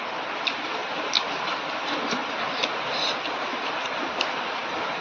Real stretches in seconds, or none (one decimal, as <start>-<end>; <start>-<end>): 0.8-1.7; 2.2-3.7